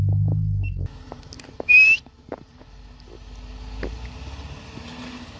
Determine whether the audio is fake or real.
real